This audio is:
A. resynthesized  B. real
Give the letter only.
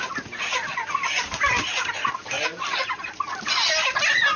B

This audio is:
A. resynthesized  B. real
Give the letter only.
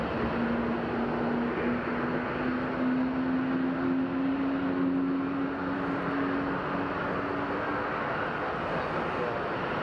B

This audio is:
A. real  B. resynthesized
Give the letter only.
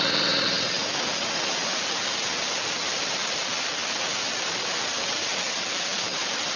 B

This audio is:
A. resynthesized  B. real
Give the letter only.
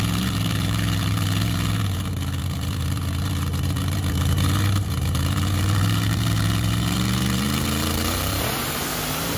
A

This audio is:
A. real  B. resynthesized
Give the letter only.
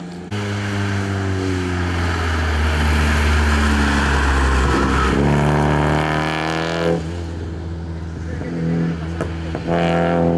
A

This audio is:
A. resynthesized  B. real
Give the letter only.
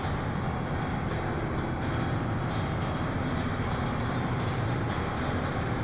A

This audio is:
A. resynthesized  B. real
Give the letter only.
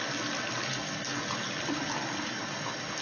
B